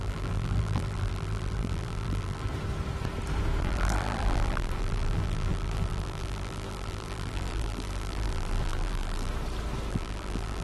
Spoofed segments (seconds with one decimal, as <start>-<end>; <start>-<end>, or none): 0.0-2.5; 3.6-9.3; 9.9-10.6